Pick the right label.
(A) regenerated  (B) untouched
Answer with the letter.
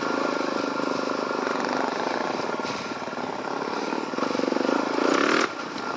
B